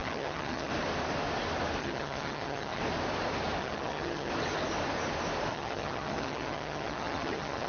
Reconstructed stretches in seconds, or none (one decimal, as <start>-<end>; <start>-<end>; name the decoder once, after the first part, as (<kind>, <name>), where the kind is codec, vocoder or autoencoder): 0.0-0.7 (vocoder, HiFi-GAN); 1.8-2.8; 3.6-4.3; 5.5-7.7